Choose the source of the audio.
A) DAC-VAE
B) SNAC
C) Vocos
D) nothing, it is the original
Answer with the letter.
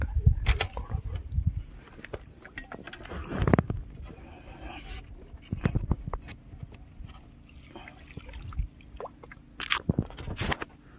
D